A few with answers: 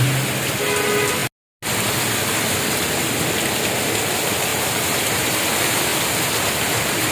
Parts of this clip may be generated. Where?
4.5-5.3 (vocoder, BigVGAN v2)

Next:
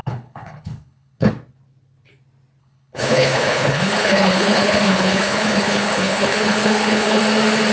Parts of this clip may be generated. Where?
0.0-1.3 (codec, HILCodec); 2.6-7.2

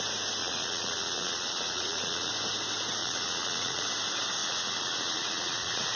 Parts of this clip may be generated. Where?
0.4-2.3 (vocoder, Vocos); 3.0-3.8; 4.4-6.0

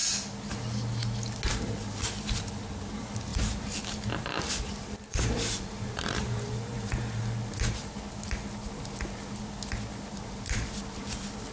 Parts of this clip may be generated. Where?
3.3-4.5 (vocoder, BigVGAN v2); 5.1-7.2

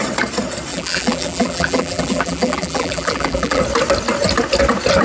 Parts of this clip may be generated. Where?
0.7-3.6 (vocoder, BigVGAN v2)

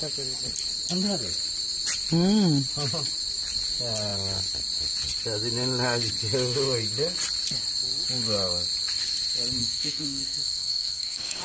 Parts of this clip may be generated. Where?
9.6-11.4 (codec, SNAC)